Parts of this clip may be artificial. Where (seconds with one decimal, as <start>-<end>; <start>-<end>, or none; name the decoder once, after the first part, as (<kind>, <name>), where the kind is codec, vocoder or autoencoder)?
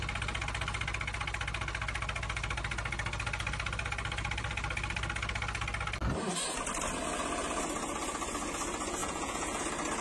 9.0-9.6 (vocoder, Vocos)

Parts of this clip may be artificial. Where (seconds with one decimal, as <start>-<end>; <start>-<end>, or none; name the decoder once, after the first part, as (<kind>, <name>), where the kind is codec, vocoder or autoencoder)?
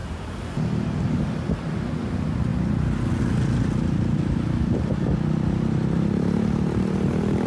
none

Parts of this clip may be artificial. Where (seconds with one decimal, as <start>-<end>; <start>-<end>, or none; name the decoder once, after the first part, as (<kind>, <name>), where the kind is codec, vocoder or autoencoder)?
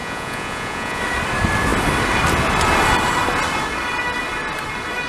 0.0-1.0 (vocoder, Vocos)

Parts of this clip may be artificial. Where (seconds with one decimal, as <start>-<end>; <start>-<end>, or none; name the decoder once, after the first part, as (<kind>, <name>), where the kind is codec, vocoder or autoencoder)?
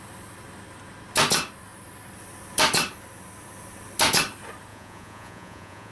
4.7-5.9 (vocoder, Vocos)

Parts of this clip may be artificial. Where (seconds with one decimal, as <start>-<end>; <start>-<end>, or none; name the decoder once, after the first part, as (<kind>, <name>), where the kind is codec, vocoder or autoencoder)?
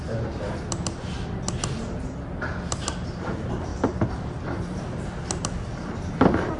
none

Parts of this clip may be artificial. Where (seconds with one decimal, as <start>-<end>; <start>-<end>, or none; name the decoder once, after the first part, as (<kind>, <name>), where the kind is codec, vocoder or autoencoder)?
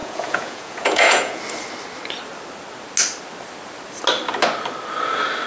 0.0-1.4 (vocoder, Vocos)